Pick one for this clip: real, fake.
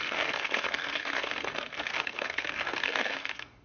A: fake